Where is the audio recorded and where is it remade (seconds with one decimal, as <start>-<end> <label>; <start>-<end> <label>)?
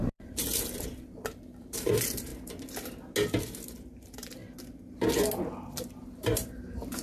0.0-2.3 remade; 2.3-3.7 recorded; 3.7-4.4 remade; 4.4-5.6 recorded; 5.6-7.0 remade